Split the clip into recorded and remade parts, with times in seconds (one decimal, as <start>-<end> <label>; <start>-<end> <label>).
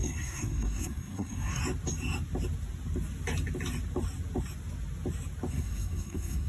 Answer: 0.0-1.6 remade; 1.6-5.5 recorded; 5.5-6.5 remade